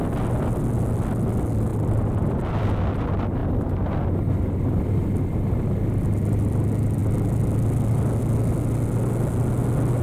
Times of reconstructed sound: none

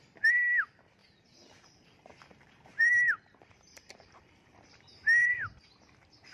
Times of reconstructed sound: 1.0-4.8; 5.2-5.8

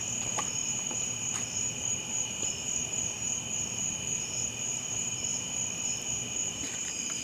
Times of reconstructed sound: 0.0-2.8; 3.4-7.2

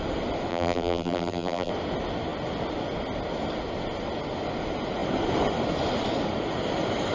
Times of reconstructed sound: 0.5-1.7

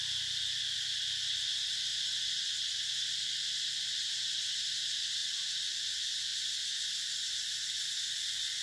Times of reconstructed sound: 0.0-1.9; 2.9-6.3; 8.0-8.6

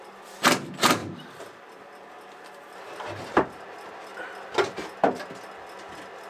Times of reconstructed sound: 1.0-1.8

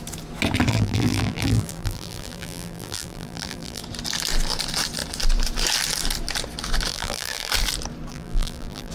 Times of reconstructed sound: 0.7-3.8; 6.9-7.5; 8.1-8.9

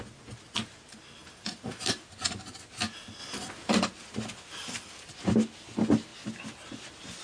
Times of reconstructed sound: 1.2-2.0; 3.2-3.7; 4.6-5.2